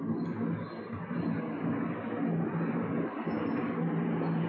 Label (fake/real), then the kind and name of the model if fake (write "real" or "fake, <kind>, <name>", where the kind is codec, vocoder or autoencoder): real